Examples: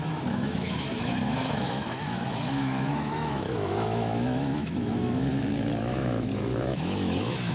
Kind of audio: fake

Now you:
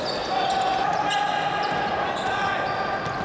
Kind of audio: real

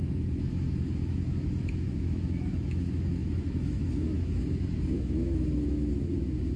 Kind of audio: fake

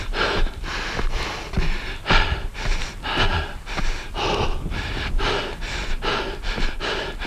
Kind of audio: real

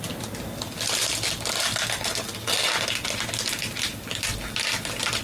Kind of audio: real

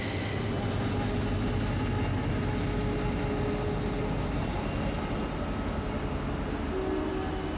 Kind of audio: real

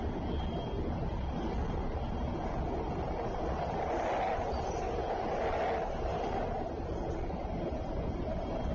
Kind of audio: real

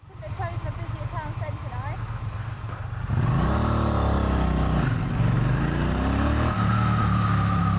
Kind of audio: real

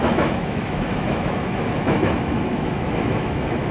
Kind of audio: fake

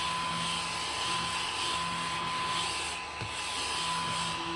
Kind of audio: real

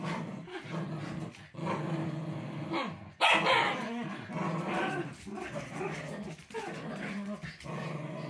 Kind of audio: real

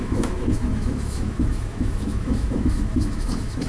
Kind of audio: fake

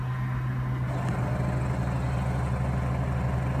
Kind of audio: real